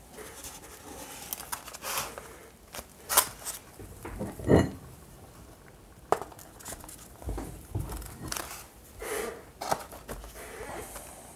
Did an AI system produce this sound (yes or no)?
no